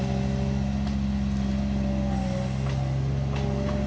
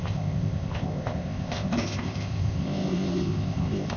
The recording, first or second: first